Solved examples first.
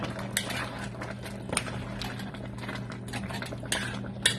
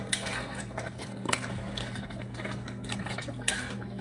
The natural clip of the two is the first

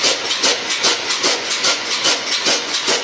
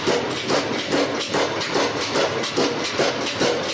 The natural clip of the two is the second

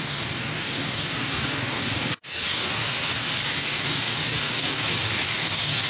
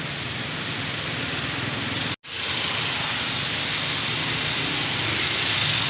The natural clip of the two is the second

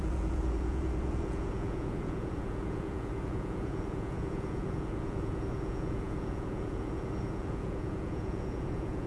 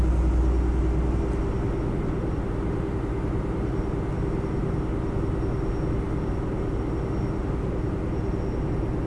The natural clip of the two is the second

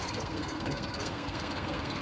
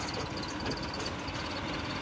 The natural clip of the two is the second